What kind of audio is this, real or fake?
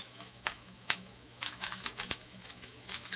fake